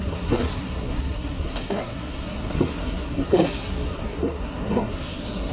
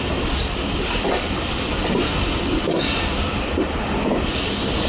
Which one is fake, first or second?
first